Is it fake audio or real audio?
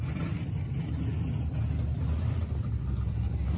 real